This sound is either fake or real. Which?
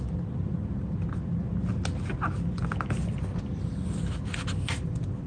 real